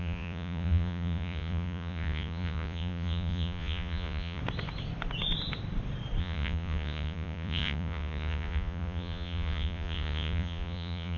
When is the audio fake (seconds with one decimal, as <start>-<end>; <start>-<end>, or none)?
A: 0.0-4.4; 6.2-11.2